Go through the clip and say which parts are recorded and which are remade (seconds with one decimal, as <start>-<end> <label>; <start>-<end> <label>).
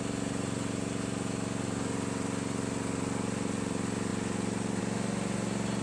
0.0-5.8 recorded